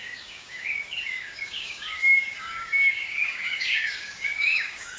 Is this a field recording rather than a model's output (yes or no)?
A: no